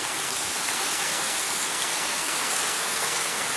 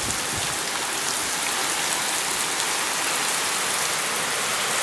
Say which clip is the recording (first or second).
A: second